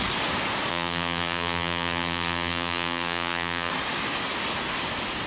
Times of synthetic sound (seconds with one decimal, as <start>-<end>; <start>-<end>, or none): 0.7-3.7